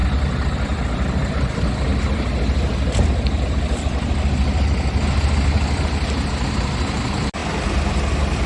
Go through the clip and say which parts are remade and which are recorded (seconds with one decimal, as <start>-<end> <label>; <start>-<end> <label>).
0.0-8.5 recorded